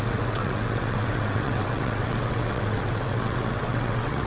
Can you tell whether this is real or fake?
fake